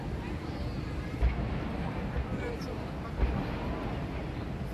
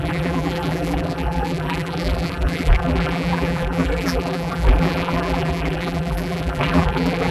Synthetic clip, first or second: second